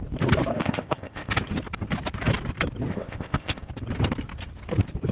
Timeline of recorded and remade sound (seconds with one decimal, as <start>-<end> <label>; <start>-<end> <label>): 0.0-0.5 recorded; 0.5-1.3 remade; 1.3-2.9 recorded; 2.9-3.7 remade; 3.7-5.1 recorded